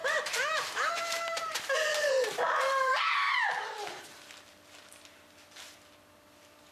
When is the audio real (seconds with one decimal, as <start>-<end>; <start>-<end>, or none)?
4.0-6.7